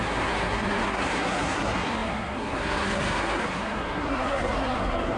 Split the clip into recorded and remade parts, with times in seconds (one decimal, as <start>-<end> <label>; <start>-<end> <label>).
0.0-5.2 remade